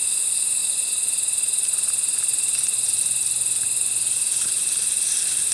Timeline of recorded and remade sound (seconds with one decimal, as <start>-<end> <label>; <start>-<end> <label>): 0.0-5.5 recorded